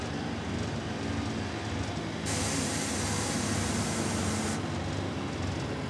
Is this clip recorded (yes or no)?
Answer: yes